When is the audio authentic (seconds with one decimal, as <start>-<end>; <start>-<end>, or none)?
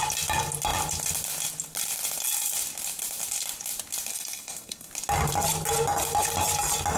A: 0.0-4.1; 4.9-7.0